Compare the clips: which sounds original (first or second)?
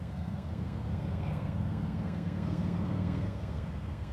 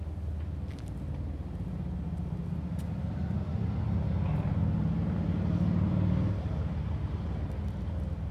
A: second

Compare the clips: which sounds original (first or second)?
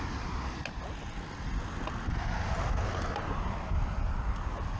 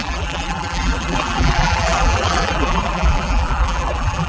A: first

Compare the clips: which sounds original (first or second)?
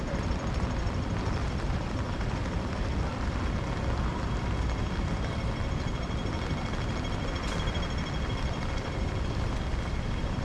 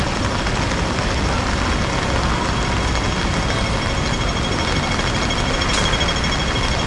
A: second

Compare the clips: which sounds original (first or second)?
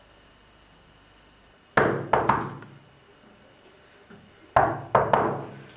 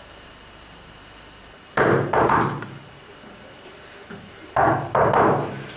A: first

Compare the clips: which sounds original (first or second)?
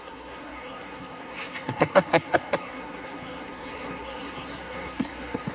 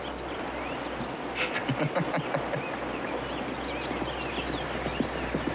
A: second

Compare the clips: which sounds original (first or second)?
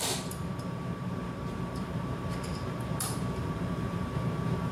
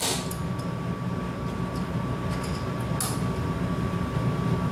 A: second